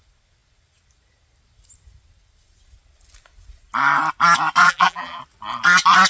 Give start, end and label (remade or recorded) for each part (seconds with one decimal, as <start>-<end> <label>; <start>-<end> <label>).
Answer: 0.0-4.6 recorded; 4.6-5.2 remade; 5.2-6.1 recorded